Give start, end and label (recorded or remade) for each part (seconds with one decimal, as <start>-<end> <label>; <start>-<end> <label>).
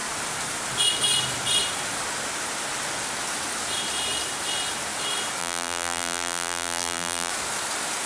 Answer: 0.0-5.4 recorded; 5.4-7.3 remade; 7.3-8.1 recorded